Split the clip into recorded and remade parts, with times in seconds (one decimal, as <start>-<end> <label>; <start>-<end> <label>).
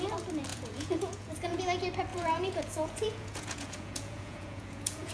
0.0-0.5 recorded; 0.5-1.6 remade; 1.6-2.1 recorded; 2.1-5.1 remade